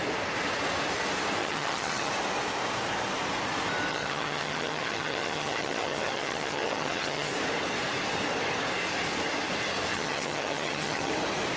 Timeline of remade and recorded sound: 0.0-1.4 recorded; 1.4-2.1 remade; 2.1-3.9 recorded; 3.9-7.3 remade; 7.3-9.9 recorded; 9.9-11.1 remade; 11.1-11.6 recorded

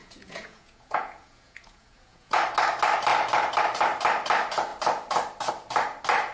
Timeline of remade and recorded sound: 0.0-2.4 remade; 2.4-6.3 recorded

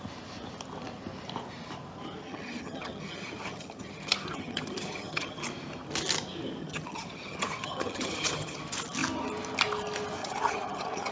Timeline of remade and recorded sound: 0.0-2.2 recorded; 2.2-5.4 remade; 5.4-6.6 recorded; 6.6-8.6 remade; 8.6-10.2 recorded; 10.2-11.1 remade

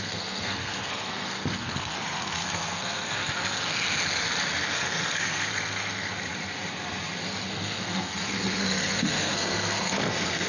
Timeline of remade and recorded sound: 0.0-3.2 remade; 3.2-4.7 recorded; 4.7-6.1 remade; 6.1-7.5 recorded; 7.5-10.5 remade

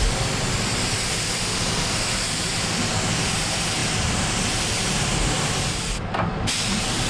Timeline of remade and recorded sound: 0.0-3.8 remade; 3.8-4.7 recorded; 4.7-7.1 remade

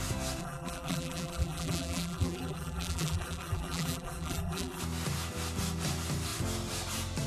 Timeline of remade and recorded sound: 0.0-0.4 recorded; 0.4-4.8 remade; 4.8-7.3 recorded